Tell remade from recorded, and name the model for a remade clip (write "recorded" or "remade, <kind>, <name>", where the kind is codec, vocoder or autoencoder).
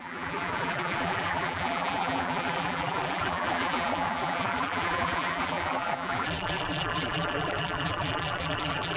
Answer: remade, vocoder, BigVGAN v2